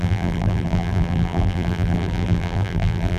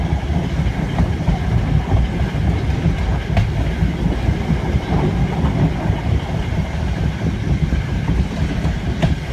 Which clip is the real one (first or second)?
second